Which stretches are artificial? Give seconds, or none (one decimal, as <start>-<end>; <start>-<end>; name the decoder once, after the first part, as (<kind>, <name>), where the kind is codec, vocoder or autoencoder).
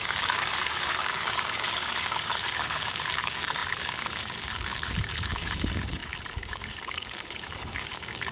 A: 0.0-8.3 (codec, DAC)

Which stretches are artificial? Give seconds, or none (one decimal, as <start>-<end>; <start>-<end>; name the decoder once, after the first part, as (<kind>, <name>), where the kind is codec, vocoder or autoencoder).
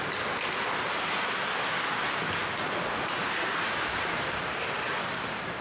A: none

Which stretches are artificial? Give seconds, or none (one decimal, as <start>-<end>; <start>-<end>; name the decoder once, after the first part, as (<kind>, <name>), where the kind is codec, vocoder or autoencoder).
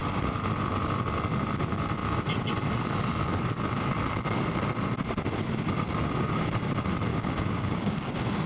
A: 7.1-8.1 (codec, DAC)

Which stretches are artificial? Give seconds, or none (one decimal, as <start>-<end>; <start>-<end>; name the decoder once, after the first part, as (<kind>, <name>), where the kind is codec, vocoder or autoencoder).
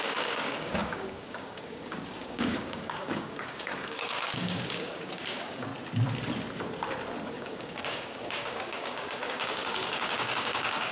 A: 0.0-5.7 (codec, DAC); 7.3-10.9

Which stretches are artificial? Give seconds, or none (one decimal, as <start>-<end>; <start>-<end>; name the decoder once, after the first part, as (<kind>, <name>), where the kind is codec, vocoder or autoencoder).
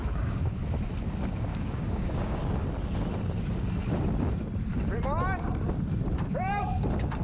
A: 0.0-0.6 (codec, DAC); 1.5-2.4